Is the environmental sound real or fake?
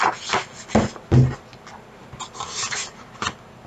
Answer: real